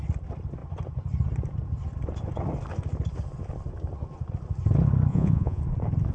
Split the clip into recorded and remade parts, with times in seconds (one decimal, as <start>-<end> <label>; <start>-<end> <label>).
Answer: 0.0-5.1 recorded; 5.1-5.6 remade; 5.6-6.1 recorded